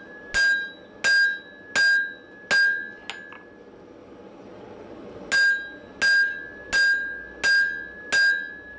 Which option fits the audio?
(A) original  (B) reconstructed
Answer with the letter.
A